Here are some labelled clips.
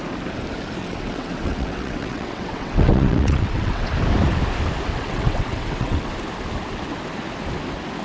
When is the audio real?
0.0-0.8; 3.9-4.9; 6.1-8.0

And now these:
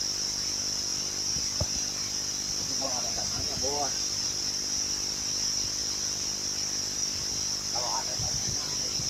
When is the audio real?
0.0-9.1

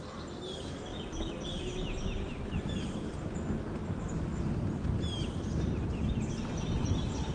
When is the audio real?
0.0-7.3

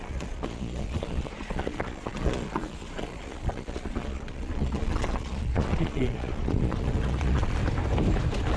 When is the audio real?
7.6-8.6

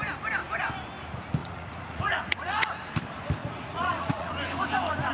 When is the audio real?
0.0-1.4; 2.8-3.4; 4.3-5.1